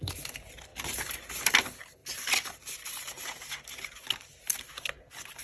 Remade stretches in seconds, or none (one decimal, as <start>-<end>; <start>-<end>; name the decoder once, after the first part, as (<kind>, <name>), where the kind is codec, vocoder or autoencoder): 0.7-1.3 (vocoder, BigVGAN v2)